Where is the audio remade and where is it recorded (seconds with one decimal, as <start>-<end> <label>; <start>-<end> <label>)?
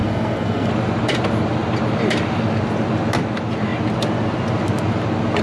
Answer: 0.0-0.7 remade; 0.7-5.4 recorded